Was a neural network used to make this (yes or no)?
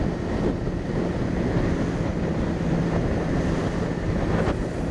no